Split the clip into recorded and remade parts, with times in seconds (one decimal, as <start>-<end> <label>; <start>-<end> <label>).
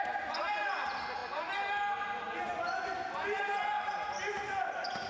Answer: 0.0-5.1 recorded